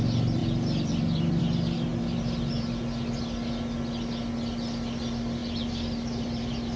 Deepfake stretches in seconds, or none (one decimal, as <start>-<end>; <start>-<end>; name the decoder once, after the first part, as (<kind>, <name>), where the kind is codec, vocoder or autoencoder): 0.4-1.4 (vocoder, BigVGAN v2); 5.4-6.8